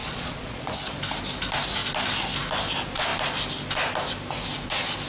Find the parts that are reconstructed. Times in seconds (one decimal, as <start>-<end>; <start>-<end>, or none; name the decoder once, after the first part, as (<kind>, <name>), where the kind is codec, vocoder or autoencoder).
0.0-0.7 (vocoder, Vocos)